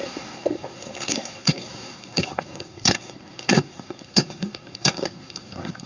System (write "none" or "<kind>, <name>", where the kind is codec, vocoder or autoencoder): codec, SNAC